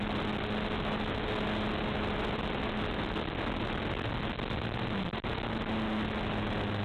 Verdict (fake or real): real